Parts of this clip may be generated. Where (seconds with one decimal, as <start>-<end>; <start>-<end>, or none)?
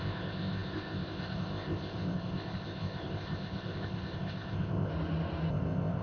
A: 0.0-4.9; 5.5-6.0